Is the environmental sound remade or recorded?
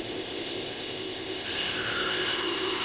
remade